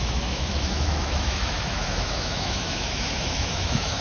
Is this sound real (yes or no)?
no